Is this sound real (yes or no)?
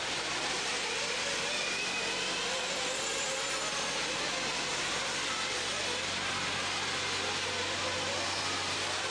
yes